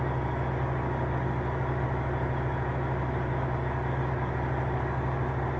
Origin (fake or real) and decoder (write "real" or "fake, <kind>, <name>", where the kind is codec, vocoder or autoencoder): real